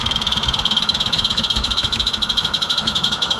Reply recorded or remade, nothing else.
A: remade